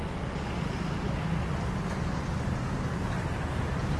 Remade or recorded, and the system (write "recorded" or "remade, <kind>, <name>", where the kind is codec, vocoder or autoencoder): recorded